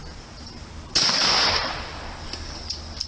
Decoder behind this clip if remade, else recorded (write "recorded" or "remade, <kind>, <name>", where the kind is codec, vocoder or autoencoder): recorded